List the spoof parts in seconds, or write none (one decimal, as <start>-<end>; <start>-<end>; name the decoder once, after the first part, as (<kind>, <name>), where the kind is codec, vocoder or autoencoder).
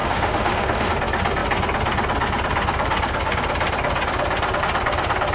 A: 0.0-0.9 (autoencoder, DAC-VAE)